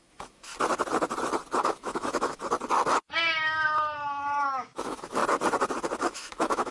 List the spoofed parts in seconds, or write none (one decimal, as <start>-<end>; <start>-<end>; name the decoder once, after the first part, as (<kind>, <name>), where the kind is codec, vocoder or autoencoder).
0.0-0.5 (autoencoder, DAC-VAE); 1.6-2.4; 3.2-5.2; 6.0-6.7